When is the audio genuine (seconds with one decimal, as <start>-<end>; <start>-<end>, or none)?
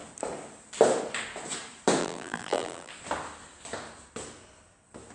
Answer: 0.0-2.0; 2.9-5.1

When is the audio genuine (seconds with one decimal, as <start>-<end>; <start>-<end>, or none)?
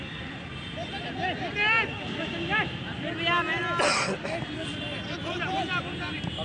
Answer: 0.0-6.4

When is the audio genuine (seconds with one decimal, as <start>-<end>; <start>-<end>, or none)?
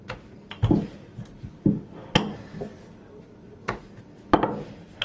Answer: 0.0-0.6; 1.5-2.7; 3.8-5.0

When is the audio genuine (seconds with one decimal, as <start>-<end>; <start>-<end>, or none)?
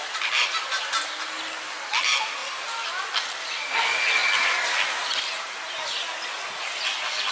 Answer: 0.0-1.9; 4.2-7.3